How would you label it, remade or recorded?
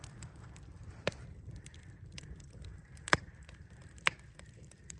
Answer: remade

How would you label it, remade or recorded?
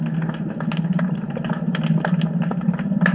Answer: recorded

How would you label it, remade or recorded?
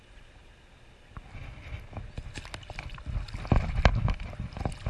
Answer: recorded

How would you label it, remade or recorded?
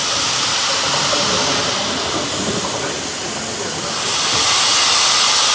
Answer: recorded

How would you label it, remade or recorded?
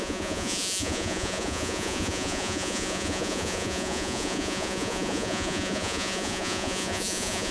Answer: remade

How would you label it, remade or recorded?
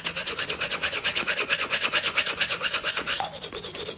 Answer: remade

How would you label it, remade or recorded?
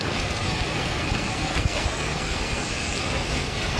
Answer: remade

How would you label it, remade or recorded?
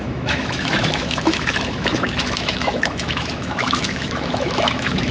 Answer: remade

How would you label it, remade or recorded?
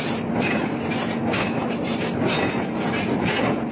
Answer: recorded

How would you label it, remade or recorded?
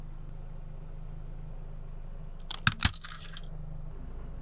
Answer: recorded